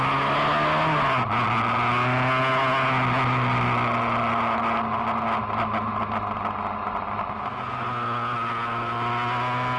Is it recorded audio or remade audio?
recorded